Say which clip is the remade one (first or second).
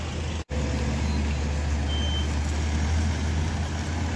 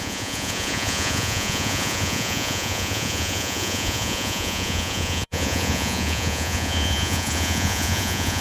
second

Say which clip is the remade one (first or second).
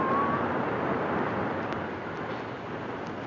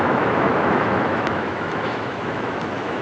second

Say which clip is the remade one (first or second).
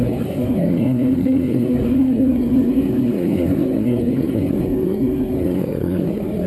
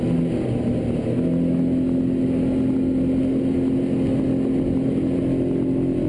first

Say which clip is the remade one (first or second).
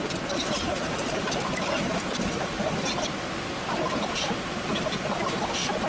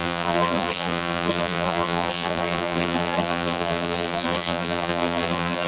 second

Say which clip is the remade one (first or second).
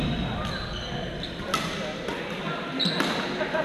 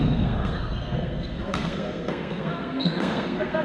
second